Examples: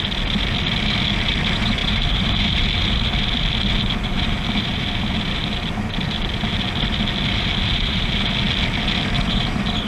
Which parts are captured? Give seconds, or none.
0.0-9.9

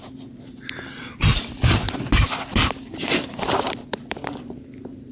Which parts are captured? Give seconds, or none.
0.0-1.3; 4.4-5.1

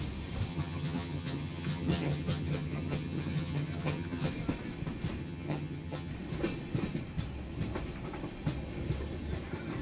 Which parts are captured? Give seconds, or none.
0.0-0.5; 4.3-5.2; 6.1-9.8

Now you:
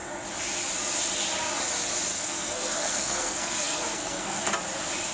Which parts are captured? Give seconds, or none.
0.0-2.1; 4.5-5.1